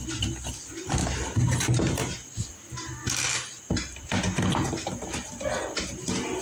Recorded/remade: recorded